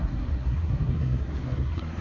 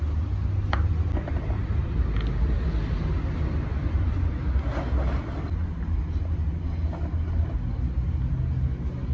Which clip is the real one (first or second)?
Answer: second